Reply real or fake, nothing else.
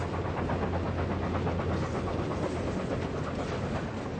real